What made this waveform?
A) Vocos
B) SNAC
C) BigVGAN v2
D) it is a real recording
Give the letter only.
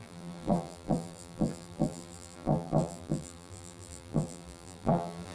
C